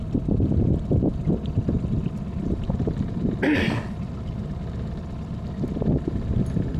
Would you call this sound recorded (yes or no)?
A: yes